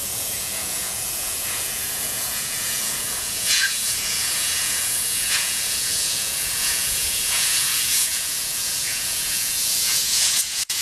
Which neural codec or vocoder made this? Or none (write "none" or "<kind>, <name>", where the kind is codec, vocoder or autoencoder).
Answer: vocoder, Vocos